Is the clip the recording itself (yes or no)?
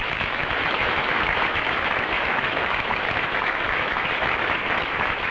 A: no